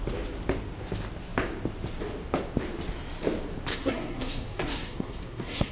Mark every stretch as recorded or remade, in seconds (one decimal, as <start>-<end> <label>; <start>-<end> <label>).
0.0-3.7 recorded; 3.7-5.7 remade